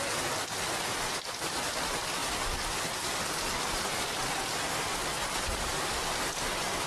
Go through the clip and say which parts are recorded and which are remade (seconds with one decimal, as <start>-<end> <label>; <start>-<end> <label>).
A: 0.0-6.9 recorded